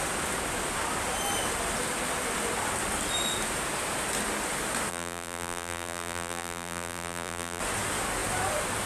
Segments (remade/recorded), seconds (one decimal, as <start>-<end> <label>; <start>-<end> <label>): 0.0-4.9 recorded; 4.9-7.6 remade; 7.6-8.9 recorded